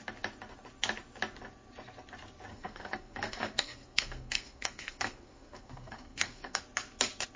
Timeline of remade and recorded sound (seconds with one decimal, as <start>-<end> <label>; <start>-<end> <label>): 0.0-2.5 recorded; 2.5-6.6 remade; 6.6-7.4 recorded